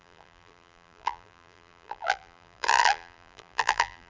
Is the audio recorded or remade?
remade